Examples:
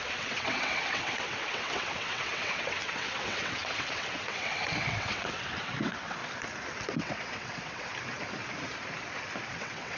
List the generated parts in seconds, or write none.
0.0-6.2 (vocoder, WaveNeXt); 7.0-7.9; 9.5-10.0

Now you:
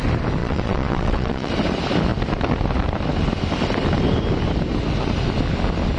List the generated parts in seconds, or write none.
0.4-1.5 (vocoder, WaveNeXt)

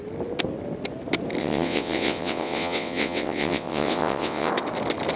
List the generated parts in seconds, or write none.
1.4-4.5 (vocoder, WaveNeXt)

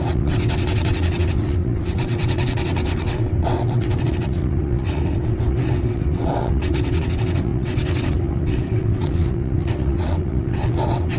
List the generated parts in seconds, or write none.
0.0-11.2 (vocoder, WaveNeXt)

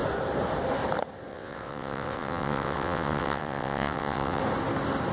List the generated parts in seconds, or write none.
1.3-4.4 (vocoder, WaveNeXt)